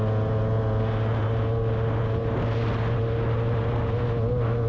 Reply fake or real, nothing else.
real